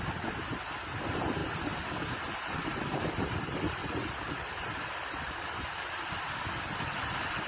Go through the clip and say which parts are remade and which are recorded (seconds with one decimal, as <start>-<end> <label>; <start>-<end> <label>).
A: 0.0-7.5 recorded